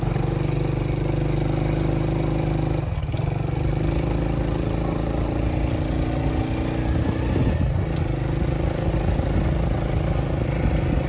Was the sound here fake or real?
real